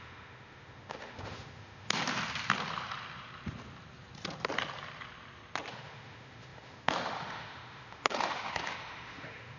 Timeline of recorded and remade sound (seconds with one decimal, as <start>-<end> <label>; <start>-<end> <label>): 0.0-2.0 remade; 2.0-5.7 recorded; 5.7-9.6 remade